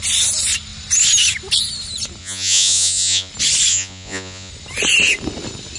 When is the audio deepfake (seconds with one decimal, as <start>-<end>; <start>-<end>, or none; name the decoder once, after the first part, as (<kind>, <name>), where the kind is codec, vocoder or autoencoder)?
2.2-3.3 (vocoder, Vocos); 3.7-4.5